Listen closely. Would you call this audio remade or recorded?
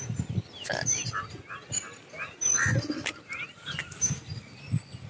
recorded